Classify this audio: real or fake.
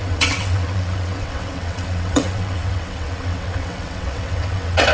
fake